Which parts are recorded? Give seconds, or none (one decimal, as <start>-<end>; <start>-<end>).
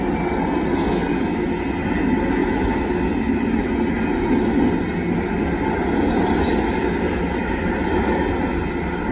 0.0-9.1